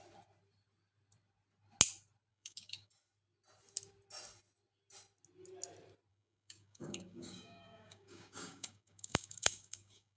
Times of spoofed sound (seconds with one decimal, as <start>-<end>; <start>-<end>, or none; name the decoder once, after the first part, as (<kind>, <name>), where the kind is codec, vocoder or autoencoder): 2.3-2.9 (codec, DAC); 6.1-10.2